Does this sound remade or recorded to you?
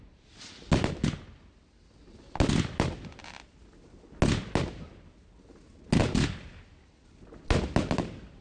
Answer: recorded